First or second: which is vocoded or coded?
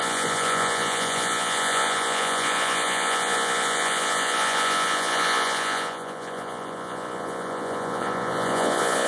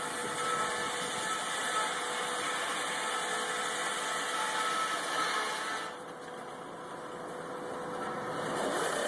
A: first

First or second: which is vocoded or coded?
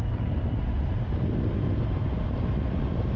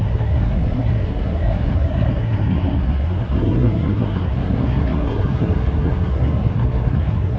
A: second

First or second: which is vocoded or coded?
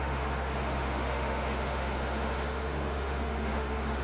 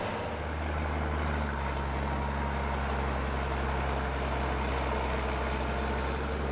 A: first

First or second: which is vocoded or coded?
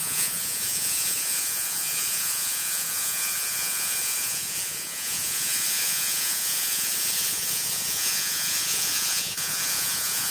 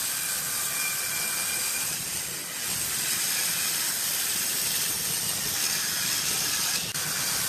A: first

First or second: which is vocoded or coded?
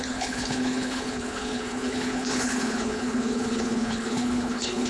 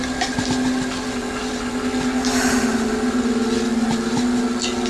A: first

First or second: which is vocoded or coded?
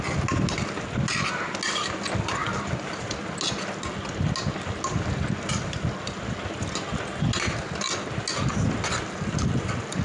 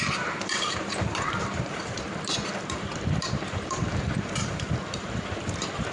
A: second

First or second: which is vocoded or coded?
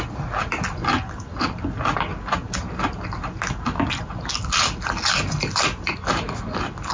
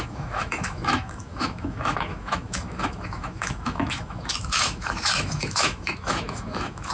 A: second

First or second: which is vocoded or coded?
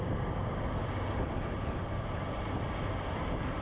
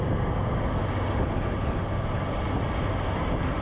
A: first